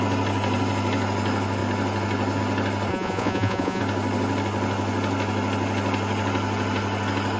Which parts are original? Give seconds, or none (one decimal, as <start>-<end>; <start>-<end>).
0.0-2.9; 3.8-7.4